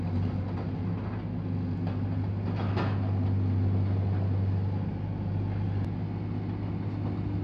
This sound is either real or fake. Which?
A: real